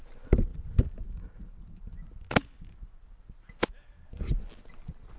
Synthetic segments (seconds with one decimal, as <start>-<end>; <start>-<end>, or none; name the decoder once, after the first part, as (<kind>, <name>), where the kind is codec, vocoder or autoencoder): none